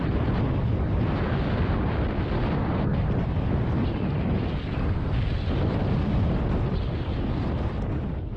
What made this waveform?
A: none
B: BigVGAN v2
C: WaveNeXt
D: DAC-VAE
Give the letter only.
A